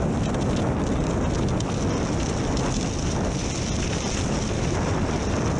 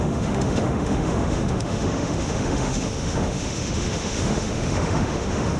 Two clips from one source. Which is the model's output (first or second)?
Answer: second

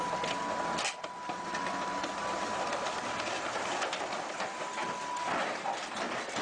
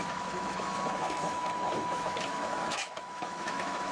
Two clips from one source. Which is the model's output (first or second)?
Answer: second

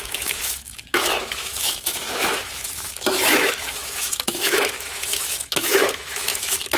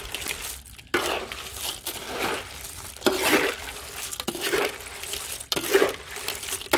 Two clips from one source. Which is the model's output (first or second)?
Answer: first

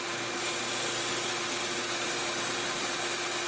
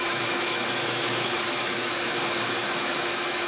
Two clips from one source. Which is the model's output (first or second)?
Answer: second